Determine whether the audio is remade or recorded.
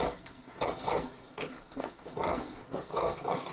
remade